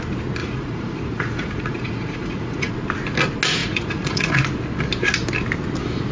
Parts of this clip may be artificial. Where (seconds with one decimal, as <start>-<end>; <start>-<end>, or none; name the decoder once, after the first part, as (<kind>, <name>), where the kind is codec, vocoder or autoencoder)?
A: 0.4-2.7 (vocoder, Vocos); 3.6-4.3